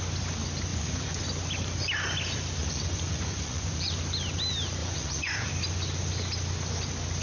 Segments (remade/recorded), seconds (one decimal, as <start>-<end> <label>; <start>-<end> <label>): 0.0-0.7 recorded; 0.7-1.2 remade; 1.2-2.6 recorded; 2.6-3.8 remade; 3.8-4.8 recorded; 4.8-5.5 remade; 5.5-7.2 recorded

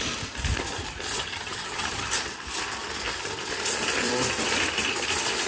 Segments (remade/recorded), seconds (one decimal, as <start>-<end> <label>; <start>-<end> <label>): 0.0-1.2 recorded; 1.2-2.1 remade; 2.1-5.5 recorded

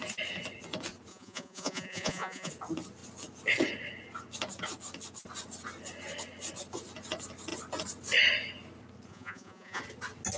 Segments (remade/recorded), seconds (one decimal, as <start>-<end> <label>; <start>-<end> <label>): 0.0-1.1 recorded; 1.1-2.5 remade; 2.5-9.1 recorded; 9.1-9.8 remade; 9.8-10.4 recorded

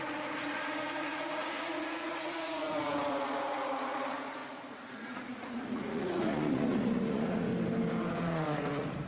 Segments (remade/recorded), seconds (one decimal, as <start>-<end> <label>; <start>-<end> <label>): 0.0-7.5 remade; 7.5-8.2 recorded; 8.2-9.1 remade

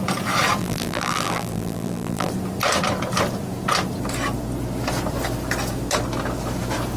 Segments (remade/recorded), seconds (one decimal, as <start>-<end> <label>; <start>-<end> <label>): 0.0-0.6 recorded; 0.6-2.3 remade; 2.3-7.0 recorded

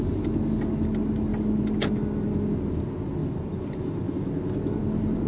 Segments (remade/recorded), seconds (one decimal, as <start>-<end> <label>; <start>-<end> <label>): 0.0-5.3 recorded

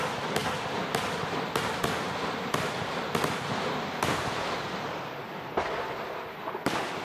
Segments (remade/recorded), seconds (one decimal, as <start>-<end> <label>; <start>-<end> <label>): 0.0-7.0 recorded